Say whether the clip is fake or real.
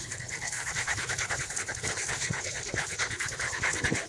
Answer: fake